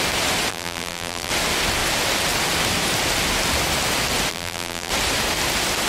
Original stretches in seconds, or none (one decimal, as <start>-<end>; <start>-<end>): 0.0-0.5; 1.3-4.3; 4.9-5.9